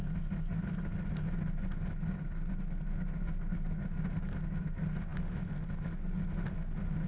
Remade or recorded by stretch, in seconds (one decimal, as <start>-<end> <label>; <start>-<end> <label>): 0.0-7.1 recorded